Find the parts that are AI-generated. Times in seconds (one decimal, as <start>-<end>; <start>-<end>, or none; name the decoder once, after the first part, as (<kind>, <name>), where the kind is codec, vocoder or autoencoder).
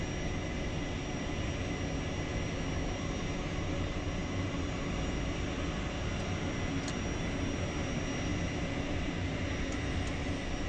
none